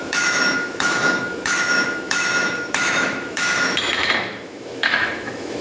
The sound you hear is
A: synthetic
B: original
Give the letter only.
A